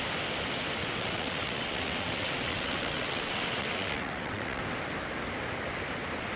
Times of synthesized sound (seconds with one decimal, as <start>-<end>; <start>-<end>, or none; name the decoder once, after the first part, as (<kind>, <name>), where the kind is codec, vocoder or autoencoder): 0.8-4.6 (vocoder, WaveNeXt)